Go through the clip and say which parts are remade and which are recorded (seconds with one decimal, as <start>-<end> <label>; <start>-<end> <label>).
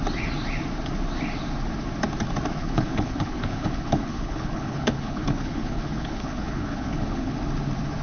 0.0-2.6 recorded; 2.6-7.4 remade; 7.4-8.0 recorded